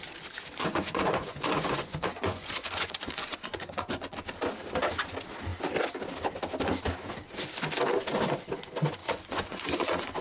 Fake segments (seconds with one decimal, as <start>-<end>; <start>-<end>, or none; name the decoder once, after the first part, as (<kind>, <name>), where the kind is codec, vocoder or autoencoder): 0.6-4.2 (vocoder, Vocos); 9.0-10.2